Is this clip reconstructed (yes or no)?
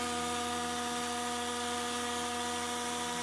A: no